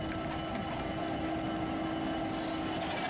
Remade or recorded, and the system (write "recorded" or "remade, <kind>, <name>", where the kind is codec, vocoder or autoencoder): recorded